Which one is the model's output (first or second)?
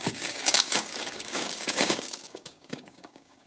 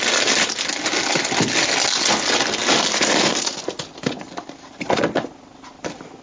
first